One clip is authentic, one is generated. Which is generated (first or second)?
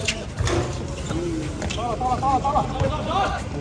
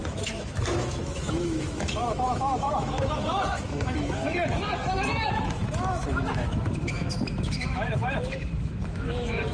second